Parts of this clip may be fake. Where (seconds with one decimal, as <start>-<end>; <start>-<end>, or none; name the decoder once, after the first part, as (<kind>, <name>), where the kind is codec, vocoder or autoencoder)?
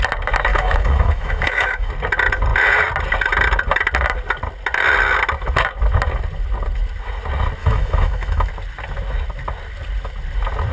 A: 0.5-1.9 (autoencoder, DAC-VAE); 7.6-8.5